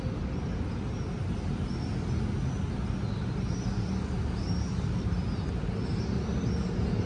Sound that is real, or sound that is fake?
real